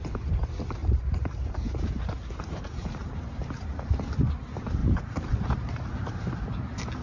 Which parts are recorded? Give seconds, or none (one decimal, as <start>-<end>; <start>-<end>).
0.0-0.8; 3.4-4.8; 6.3-7.0